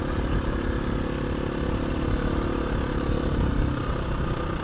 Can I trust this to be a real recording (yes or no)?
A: yes